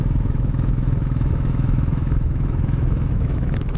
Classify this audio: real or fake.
fake